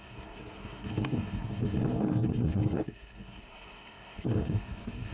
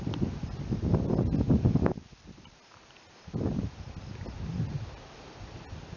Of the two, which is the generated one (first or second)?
first